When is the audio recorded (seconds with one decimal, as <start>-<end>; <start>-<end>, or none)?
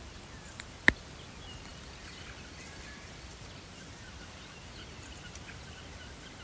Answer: 0.0-6.4